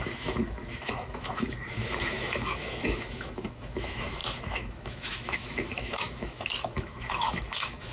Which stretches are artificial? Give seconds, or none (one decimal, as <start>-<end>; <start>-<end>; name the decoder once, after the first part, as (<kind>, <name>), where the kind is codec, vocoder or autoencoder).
0.0-7.9 (autoencoder, DAC-VAE)